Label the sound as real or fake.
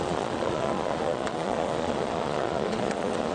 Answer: fake